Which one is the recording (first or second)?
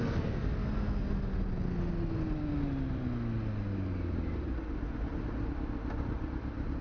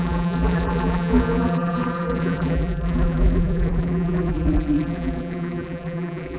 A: first